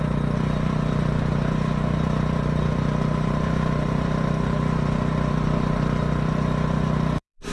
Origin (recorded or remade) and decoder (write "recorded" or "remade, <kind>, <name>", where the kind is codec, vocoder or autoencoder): remade, vocoder, BigVGAN v2